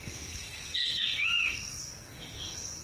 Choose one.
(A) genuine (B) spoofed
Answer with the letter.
B